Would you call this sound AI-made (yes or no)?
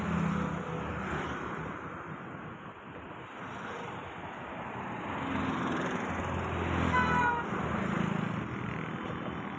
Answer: no